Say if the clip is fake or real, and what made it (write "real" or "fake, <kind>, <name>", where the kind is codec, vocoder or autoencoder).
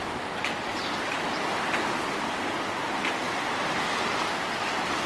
real